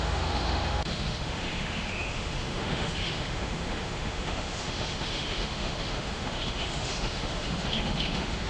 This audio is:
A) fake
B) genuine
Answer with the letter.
A